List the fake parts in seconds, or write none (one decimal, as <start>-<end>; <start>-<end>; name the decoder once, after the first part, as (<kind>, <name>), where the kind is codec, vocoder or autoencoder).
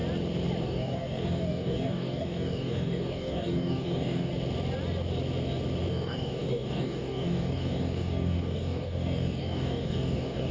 0.6-4.3 (codec, DAC); 5.9-10.5